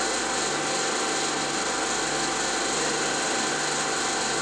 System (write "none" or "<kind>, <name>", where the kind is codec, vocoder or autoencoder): none